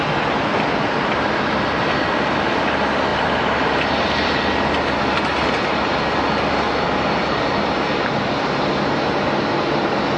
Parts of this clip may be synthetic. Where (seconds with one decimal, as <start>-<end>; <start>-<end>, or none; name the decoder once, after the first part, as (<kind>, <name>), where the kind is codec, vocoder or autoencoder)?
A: 3.1-4.4 (vocoder, BigVGAN v2)